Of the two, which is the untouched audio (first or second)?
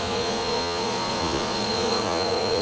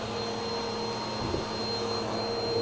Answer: second